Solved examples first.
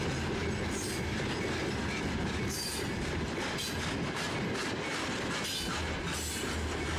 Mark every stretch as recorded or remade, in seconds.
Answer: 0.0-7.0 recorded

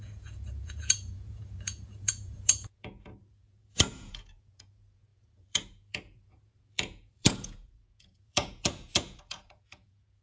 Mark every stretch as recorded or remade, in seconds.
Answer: 0.0-10.2 remade

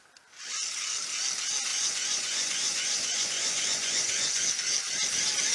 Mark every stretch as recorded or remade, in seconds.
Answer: 0.0-1.7 recorded; 1.7-4.5 remade; 4.5-5.5 recorded

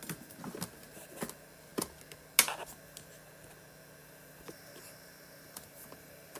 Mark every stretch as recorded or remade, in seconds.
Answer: 0.0-4.0 recorded; 4.0-6.4 remade

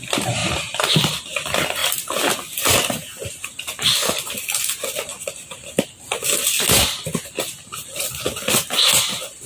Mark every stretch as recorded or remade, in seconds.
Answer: 0.0-0.4 recorded; 0.4-1.1 remade; 1.1-9.5 recorded

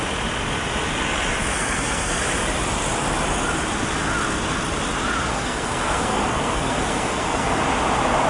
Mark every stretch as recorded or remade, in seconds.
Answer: 0.0-1.5 recorded; 1.5-2.2 remade; 2.2-5.3 recorded; 5.3-7.6 remade; 7.6-8.3 recorded